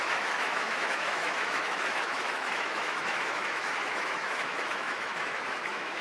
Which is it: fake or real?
fake